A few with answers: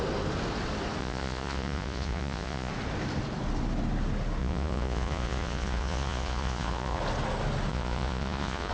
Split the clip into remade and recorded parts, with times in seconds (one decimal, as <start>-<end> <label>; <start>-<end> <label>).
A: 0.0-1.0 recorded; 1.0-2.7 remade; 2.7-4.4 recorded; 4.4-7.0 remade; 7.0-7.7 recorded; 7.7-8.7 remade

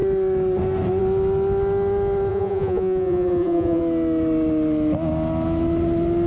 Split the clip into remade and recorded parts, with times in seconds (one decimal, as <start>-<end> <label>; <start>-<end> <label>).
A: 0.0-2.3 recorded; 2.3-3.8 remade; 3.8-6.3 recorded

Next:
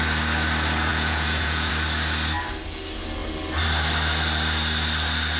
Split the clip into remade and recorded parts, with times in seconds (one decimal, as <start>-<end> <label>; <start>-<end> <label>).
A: 0.0-0.9 recorded; 0.9-1.7 remade; 1.7-5.4 recorded

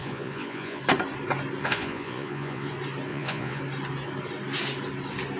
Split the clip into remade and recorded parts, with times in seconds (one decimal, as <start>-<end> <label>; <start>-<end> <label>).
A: 0.0-0.8 remade; 0.8-1.6 recorded; 1.6-2.7 remade; 2.7-3.1 recorded; 3.1-3.6 remade; 3.6-5.4 recorded

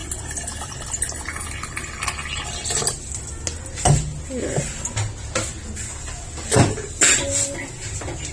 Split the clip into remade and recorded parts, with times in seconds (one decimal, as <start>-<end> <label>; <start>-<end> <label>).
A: 0.0-8.3 recorded